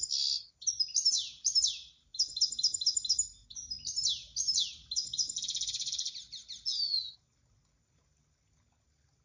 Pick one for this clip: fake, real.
real